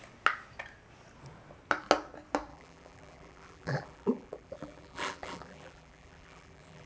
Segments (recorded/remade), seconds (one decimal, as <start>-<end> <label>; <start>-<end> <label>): 0.0-2.5 recorded; 2.5-6.9 remade